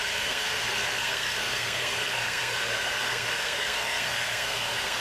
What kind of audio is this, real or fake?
fake